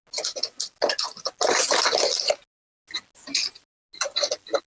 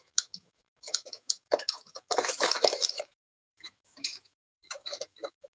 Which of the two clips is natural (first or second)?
first